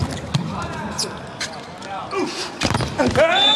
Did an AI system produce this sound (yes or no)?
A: no